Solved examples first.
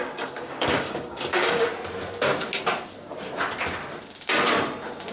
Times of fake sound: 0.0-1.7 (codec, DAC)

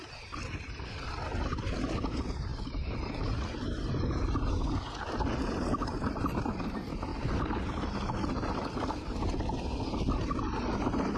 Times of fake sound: none

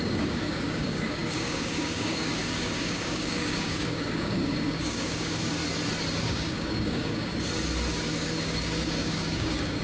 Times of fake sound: 0.0-5.6 (codec, DAC); 6.2-7.3; 8.1-9.8

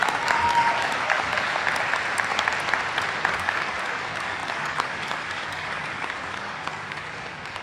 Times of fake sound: 0.0-1.6 (codec, DAC); 3.3-7.6

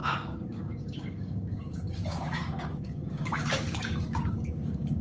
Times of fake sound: 0.0-5.0 (codec, DAC)

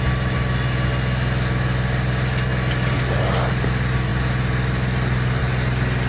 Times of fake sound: none